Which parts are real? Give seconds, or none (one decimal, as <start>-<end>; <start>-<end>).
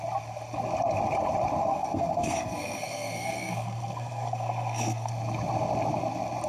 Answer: 0.0-1.6; 5.1-6.5